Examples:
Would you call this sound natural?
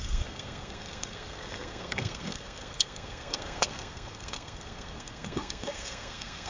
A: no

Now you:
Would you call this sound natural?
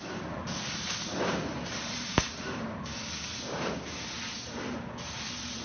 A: yes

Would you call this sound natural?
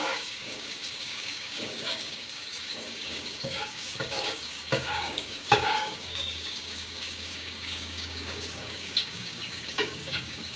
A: no